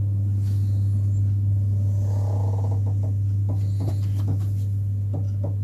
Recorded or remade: recorded